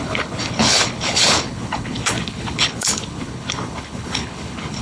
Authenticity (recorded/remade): remade